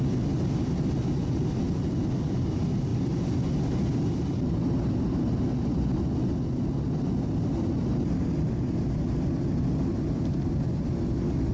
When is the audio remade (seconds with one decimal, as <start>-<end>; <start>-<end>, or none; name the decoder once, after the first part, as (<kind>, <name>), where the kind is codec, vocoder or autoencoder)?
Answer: none